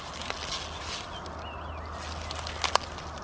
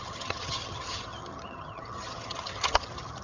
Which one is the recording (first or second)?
first